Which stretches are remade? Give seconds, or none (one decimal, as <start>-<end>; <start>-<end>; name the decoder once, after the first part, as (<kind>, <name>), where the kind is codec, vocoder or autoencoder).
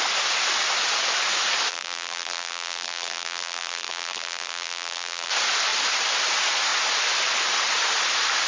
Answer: 1.7-5.3 (vocoder, BigVGAN v2)